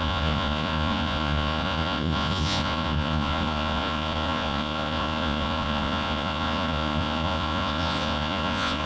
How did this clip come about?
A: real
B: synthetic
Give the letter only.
B